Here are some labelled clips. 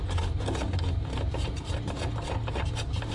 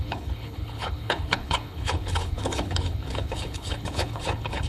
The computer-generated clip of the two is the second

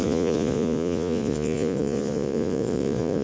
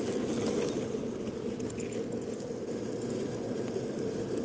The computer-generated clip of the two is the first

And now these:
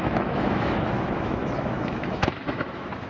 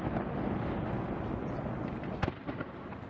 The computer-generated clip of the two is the first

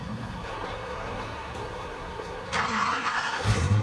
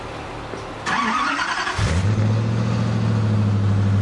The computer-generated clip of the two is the first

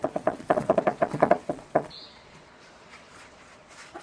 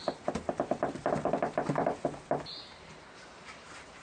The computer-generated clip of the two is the first